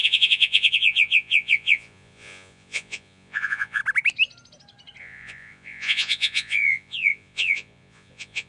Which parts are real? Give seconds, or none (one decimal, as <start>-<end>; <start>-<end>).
3.8-5.0